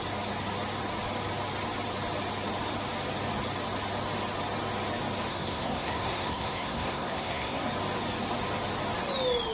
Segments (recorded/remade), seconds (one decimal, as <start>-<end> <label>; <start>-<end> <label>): 0.0-5.3 recorded; 5.3-7.7 remade; 7.7-9.5 recorded